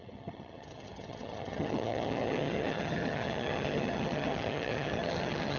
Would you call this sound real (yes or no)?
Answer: no